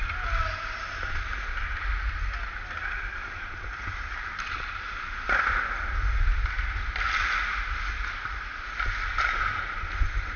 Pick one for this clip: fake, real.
real